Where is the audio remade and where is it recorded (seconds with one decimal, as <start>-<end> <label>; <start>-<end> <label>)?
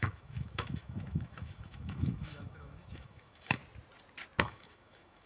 0.0-3.6 remade; 3.6-4.4 recorded; 4.4-5.3 remade